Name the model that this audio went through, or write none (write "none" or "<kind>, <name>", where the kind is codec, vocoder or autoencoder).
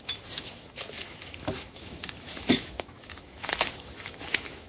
autoencoder, DAC-VAE